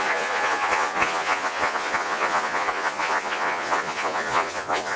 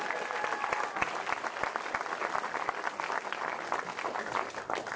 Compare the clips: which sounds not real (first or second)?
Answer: first